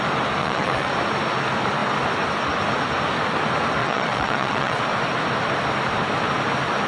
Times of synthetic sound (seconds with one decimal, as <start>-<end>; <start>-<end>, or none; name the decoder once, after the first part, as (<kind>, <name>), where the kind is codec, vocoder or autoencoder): 0.4-0.9 (vocoder, WaveNeXt); 3.8-4.8